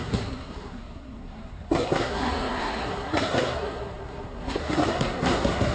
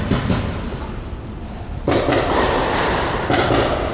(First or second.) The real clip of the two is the second